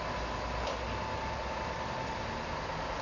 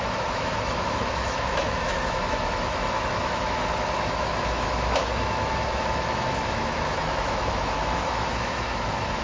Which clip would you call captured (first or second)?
first